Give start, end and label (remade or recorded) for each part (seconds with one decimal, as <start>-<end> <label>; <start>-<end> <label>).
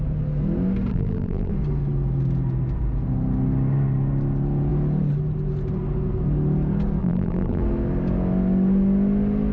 0.0-0.9 recorded; 0.9-1.5 remade; 1.5-7.0 recorded; 7.0-7.6 remade; 7.6-9.5 recorded